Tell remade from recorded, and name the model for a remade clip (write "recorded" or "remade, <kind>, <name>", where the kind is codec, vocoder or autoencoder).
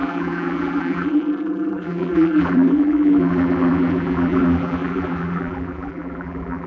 remade, vocoder, BigVGAN v2